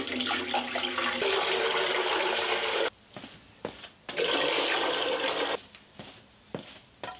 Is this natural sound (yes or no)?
yes